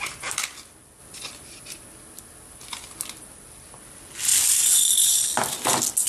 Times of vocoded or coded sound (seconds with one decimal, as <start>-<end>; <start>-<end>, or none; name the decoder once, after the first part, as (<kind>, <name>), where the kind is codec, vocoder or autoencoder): none